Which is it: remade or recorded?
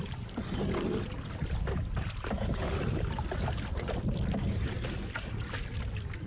recorded